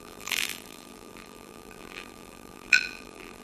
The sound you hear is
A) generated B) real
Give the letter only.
A